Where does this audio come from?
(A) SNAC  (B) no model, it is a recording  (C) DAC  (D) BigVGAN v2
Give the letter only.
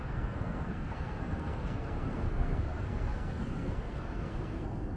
A